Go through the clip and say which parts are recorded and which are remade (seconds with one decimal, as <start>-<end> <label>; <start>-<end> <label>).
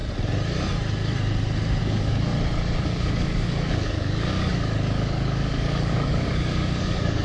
0.0-1.8 recorded; 1.8-2.3 remade; 2.3-2.8 recorded; 2.8-7.2 remade